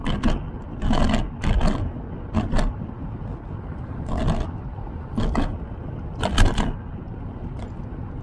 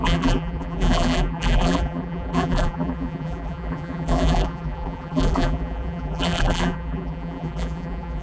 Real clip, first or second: first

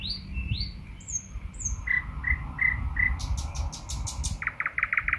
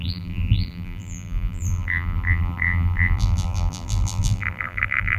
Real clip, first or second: first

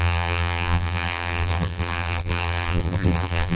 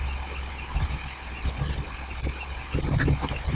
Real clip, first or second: second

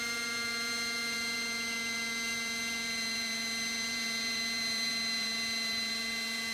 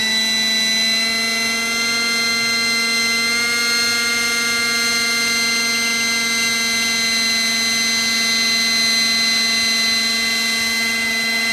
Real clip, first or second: second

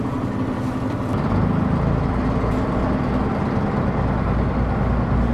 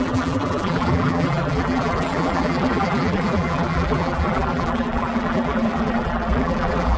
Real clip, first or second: first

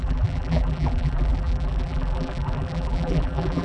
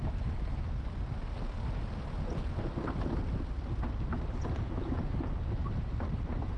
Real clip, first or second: second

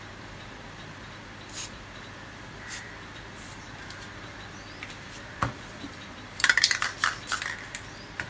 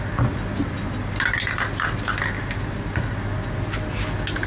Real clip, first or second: second